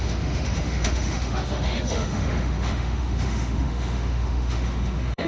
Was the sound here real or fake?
fake